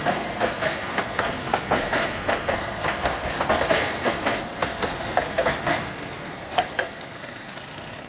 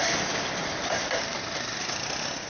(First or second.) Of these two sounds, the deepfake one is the first